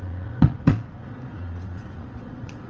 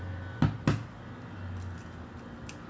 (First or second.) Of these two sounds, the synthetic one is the first